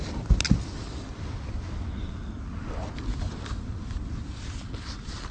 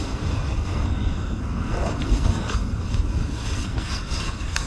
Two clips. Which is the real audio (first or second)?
first